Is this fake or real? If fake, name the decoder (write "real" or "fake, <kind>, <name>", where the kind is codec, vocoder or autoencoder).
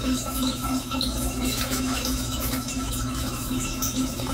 fake, autoencoder, DAC-VAE